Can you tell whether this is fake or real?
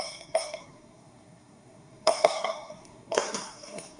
fake